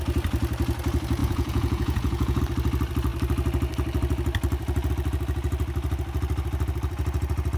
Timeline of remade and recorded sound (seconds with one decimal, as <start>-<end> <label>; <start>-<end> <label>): 0.0-1.2 recorded; 1.2-2.4 remade; 2.4-7.6 recorded